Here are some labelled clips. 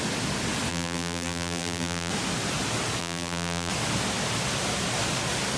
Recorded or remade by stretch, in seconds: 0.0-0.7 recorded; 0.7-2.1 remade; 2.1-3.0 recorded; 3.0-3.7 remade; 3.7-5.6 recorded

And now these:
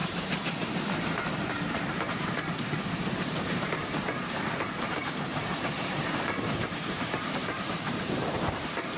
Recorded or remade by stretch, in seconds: 0.0-9.0 remade

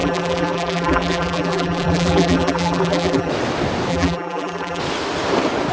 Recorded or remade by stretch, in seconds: 0.0-3.3 remade; 3.3-3.9 recorded; 3.9-4.8 remade; 4.8-5.7 recorded

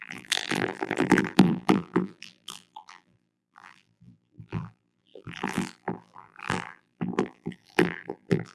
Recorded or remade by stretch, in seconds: 0.0-8.5 remade